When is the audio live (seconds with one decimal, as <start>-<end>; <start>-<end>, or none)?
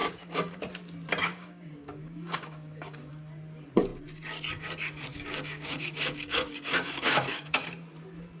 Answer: 0.6-1.3; 3.1-5.1; 7.6-8.4